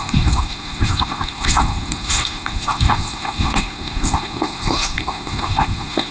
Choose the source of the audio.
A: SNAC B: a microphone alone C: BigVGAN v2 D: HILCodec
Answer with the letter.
A